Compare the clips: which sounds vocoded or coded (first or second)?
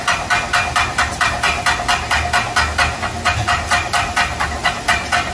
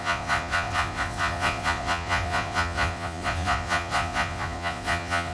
second